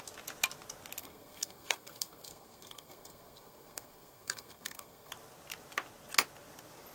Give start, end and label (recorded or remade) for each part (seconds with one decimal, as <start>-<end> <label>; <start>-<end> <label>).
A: 0.0-1.0 recorded; 1.0-5.1 remade; 5.1-6.9 recorded